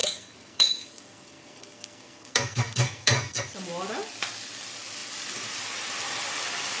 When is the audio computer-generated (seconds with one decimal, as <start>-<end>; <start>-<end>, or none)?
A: 0.0-3.4